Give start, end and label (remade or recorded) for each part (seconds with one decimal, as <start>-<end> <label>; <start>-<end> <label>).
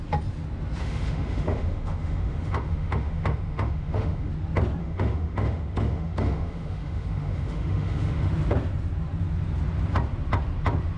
0.0-0.8 recorded; 0.8-4.3 remade; 4.3-4.8 recorded; 4.8-8.3 remade; 8.3-11.0 recorded